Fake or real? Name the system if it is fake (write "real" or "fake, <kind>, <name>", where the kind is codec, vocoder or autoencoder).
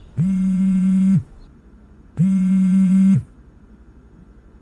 fake, vocoder, Vocos